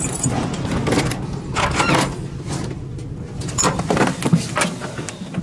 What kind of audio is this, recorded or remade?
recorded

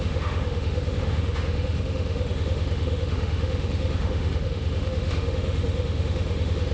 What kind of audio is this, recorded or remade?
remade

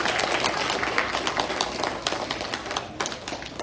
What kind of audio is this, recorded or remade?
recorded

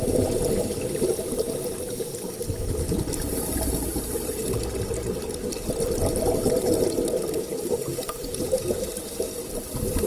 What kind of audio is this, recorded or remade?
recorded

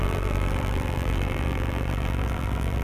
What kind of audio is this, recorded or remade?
remade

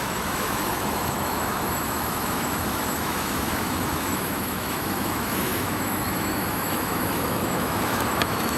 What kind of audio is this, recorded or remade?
remade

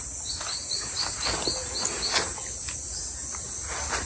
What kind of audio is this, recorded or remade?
recorded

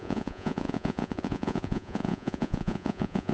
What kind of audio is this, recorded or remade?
remade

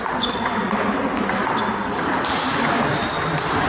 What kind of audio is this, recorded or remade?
recorded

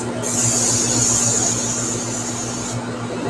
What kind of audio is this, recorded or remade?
recorded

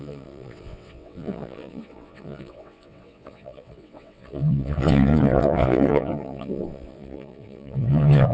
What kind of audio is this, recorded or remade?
remade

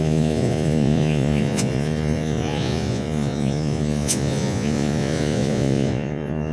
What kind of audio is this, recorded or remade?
remade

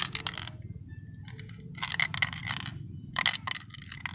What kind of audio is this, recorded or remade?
recorded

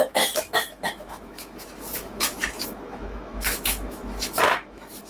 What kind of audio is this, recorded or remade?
remade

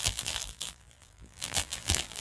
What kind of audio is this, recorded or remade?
remade